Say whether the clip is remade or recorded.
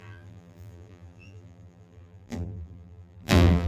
remade